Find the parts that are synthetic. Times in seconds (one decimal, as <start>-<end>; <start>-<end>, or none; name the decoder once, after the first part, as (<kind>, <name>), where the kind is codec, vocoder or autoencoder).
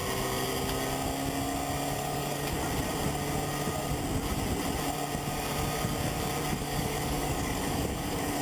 1.9-2.6 (codec, DAC); 6.5-8.4